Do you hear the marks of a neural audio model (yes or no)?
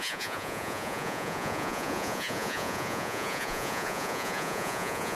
yes